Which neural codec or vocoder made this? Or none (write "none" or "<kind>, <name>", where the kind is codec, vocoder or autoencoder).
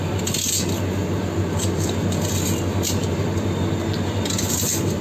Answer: none